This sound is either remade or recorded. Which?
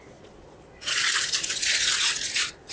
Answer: remade